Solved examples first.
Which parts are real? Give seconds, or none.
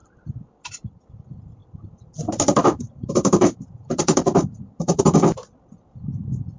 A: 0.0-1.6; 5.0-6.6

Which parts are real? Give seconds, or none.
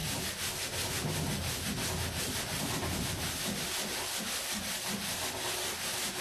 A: 0.0-6.2